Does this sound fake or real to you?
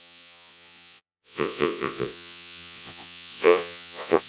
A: fake